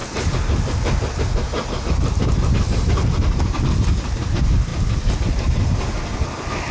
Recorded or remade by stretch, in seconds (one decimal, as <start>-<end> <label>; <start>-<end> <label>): 0.0-6.7 recorded

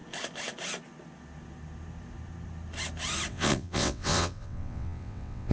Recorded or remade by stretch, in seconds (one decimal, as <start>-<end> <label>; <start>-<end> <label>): 0.0-3.3 recorded; 3.3-5.5 remade

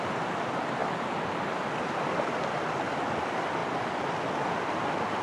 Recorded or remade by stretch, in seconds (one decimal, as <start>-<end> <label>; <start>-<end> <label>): 0.0-5.2 recorded

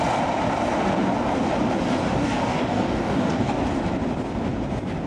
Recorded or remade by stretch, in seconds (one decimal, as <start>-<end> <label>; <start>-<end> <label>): 0.0-2.1 recorded; 2.1-3.6 remade; 3.6-5.1 recorded

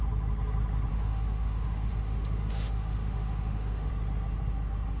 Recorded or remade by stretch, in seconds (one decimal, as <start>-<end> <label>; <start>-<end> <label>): 0.0-0.9 recorded; 0.9-3.9 remade; 3.9-5.0 recorded

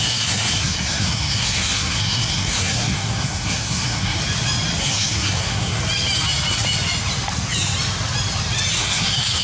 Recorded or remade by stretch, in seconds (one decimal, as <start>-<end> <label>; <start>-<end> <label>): 0.0-4.2 remade; 4.2-4.8 recorded; 4.8-5.8 remade; 5.8-8.8 recorded; 8.8-9.4 remade